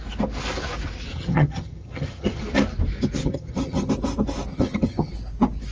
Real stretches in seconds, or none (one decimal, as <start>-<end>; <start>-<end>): 0.0-1.1; 2.4-3.2; 3.9-4.5; 5.1-5.7

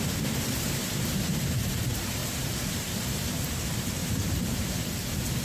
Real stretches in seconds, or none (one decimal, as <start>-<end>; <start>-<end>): 0.8-1.4; 2.2-2.7